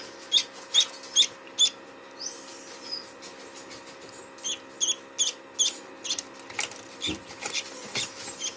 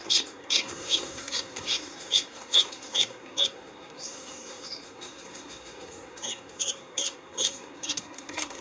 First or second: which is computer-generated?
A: second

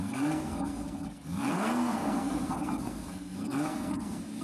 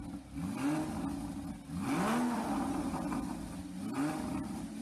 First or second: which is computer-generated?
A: first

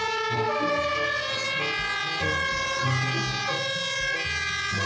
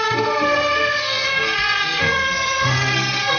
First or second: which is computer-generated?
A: second